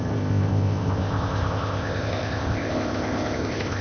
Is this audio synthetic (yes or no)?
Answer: yes